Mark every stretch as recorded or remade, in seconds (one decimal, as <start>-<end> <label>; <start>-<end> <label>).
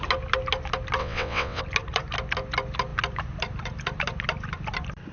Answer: 0.0-1.0 recorded; 1.0-1.6 remade; 1.6-5.1 recorded